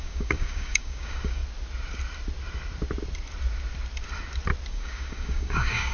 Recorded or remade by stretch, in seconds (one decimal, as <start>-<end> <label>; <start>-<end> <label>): 0.0-1.4 remade; 1.4-4.7 recorded; 4.7-5.9 remade